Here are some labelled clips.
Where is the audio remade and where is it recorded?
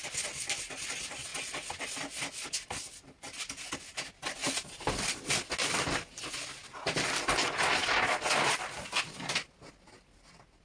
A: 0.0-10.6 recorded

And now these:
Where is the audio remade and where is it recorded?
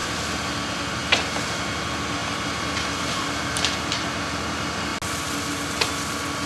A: 0.0-2.2 recorded; 2.2-3.3 remade; 3.3-6.5 recorded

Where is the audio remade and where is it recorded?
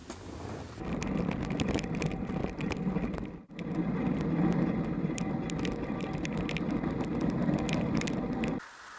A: 0.0-9.0 recorded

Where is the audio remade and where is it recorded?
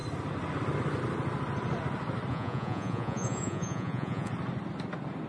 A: 0.0-2.3 recorded; 2.3-4.3 remade; 4.3-5.3 recorded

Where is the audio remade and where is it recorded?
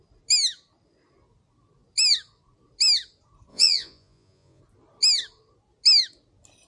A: 0.0-3.5 recorded; 3.5-4.6 remade; 4.6-6.7 recorded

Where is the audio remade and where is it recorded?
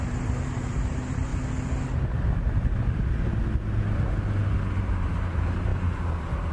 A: 0.0-1.3 remade; 1.3-4.8 recorded; 4.8-6.5 remade